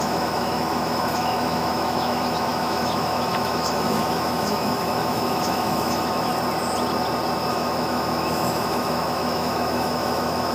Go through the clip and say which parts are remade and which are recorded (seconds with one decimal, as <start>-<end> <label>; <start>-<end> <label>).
0.0-6.3 remade; 6.3-7.5 recorded; 7.5-10.5 remade